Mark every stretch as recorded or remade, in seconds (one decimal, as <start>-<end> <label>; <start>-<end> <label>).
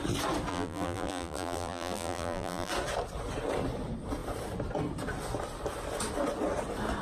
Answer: 0.0-0.5 recorded; 0.5-2.7 remade; 2.7-7.0 recorded